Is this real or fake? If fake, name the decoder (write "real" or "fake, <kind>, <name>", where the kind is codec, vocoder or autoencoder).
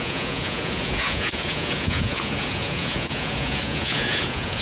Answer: fake, vocoder, Vocos